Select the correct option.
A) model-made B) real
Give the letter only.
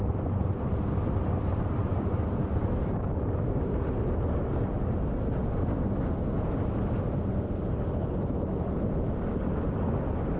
B